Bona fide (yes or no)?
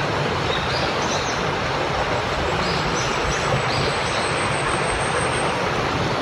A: yes